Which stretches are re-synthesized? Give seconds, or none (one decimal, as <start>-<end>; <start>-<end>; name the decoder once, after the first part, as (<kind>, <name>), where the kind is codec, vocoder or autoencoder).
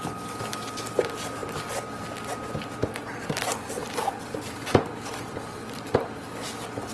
none